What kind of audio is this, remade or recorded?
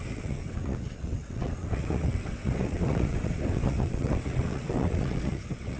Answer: remade